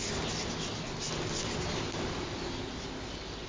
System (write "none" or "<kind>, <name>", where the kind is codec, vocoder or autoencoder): none